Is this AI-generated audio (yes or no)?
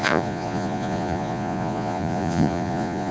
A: yes